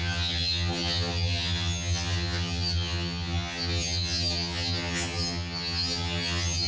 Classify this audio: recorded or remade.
remade